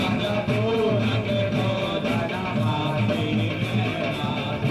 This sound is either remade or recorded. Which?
recorded